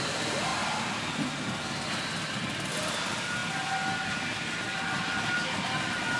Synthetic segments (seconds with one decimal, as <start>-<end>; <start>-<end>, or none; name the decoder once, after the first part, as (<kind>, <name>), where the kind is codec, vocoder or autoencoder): none